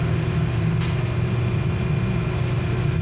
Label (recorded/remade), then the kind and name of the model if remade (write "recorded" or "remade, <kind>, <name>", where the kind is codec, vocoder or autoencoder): recorded